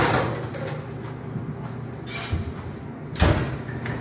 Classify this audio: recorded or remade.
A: recorded